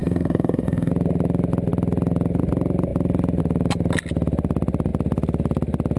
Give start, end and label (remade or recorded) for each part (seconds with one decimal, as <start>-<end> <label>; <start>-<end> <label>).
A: 0.0-0.9 remade; 0.9-6.0 recorded